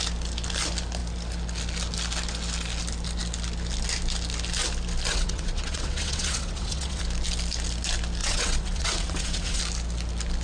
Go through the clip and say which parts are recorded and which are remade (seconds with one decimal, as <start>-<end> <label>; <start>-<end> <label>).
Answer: 0.0-5.1 recorded; 5.1-7.0 remade; 7.0-8.2 recorded; 8.2-9.6 remade; 9.6-10.4 recorded